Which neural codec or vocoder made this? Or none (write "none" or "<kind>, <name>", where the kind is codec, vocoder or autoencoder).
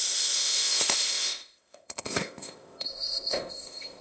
codec, ZipCodec